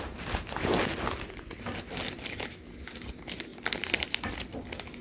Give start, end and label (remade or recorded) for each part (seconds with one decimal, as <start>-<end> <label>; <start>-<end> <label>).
0.0-5.0 recorded